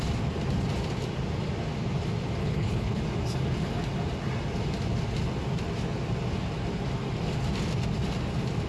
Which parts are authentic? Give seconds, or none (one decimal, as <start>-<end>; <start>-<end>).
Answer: 0.0-2.4; 3.0-8.7